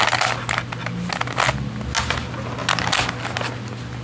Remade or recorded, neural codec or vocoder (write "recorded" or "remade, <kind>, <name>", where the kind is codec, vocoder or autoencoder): recorded